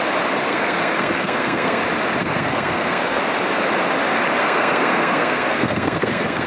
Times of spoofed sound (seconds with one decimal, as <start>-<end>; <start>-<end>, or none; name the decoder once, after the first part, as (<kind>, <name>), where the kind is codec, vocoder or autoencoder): 0.5-1.8 (codec, SNAC); 2.2-3.2; 4.4-6.5